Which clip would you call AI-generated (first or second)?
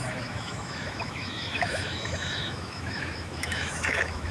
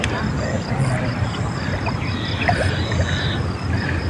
first